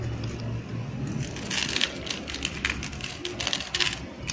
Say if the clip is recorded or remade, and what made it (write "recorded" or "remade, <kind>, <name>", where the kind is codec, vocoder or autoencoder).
recorded